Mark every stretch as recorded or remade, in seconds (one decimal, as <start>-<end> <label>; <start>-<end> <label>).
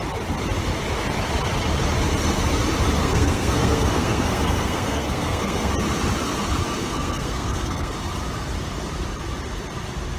0.0-3.0 recorded; 3.0-5.7 remade; 5.7-6.8 recorded; 6.8-7.9 remade; 7.9-10.2 recorded